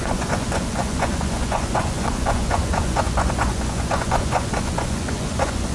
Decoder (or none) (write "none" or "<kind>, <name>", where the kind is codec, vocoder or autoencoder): vocoder, Vocos